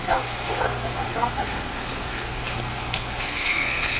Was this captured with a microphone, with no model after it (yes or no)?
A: no